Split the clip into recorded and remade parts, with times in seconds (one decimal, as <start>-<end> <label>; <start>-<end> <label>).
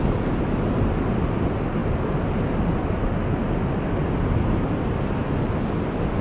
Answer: 0.0-6.2 recorded